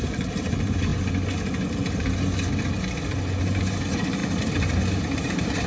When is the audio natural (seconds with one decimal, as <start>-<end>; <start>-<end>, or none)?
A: 0.9-3.4